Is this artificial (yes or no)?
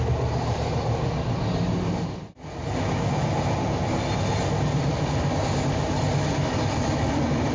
no